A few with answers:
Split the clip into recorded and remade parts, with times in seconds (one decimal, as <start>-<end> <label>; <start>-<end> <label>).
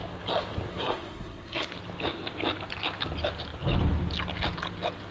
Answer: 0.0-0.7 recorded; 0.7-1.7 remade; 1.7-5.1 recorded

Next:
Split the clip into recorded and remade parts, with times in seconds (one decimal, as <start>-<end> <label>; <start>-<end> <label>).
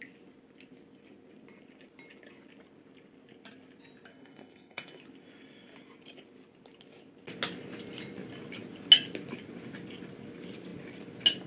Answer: 0.0-4.1 recorded; 4.1-5.0 remade; 5.0-11.5 recorded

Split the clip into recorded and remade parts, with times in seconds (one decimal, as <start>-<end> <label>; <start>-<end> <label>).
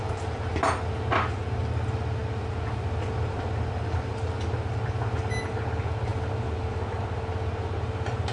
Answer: 0.0-8.3 recorded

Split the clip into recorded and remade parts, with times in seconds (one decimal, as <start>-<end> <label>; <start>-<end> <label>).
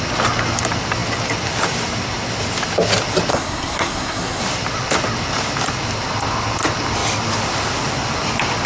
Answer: 0.0-3.3 recorded; 3.3-4.4 remade; 4.4-8.7 recorded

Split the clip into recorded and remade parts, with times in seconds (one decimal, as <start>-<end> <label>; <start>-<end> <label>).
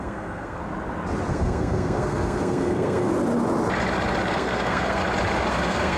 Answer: 0.0-0.6 remade; 0.6-1.3 recorded; 1.3-3.1 remade; 3.1-4.3 recorded; 4.3-5.0 remade; 5.0-5.5 recorded; 5.5-6.0 remade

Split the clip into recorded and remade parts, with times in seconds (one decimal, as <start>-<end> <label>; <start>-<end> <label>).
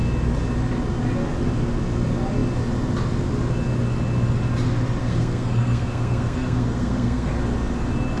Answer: 0.0-5.0 recorded; 5.0-7.3 remade; 7.3-8.2 recorded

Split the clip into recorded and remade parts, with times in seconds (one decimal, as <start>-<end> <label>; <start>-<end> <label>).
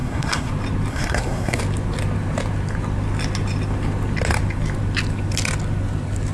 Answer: 0.0-0.5 remade; 0.5-0.9 recorded; 0.9-1.6 remade; 1.6-6.3 recorded